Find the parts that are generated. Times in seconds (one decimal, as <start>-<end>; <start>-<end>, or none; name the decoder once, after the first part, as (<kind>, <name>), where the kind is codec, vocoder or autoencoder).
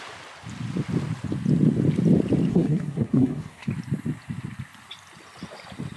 2.5-3.7 (codec, SNAC)